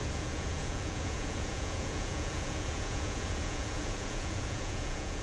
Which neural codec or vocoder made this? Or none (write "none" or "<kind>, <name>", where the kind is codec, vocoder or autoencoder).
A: vocoder, Vocos